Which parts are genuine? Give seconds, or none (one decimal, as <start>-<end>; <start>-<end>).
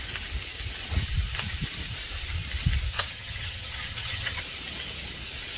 0.0-2.9; 4.4-5.6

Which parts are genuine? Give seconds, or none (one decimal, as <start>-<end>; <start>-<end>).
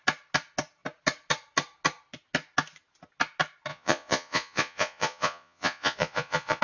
0.0-3.7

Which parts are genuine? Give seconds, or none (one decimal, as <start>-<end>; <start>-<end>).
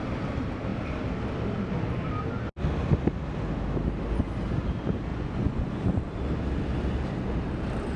0.0-5.1; 5.8-8.0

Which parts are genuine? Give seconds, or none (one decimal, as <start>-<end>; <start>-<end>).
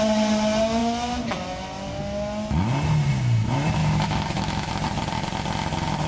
0.0-3.8; 4.7-6.1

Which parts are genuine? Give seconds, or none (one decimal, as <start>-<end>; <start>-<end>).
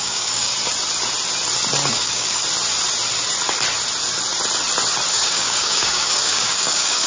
0.5-1.9; 2.4-5.1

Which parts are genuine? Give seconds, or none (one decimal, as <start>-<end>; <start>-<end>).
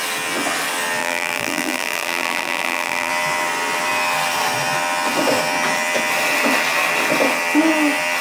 0.0-1.0; 3.1-8.2